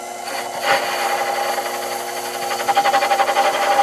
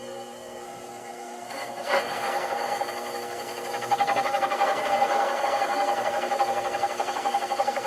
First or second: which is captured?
first